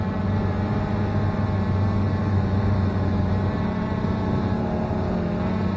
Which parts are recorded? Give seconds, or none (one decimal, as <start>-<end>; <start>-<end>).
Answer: 0.0-2.2; 3.3-5.8